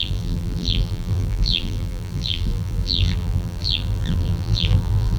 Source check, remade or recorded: remade